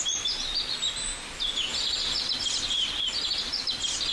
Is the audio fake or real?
real